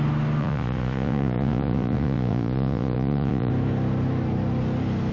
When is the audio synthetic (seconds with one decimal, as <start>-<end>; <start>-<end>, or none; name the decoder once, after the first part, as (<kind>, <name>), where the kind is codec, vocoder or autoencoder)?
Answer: 0.4-3.5 (vocoder, Vocos)